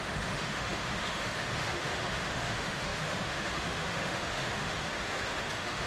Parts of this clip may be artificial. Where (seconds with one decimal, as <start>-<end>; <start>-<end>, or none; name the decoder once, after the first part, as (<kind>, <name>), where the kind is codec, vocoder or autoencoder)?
0.0-5.9 (autoencoder, DAC-VAE)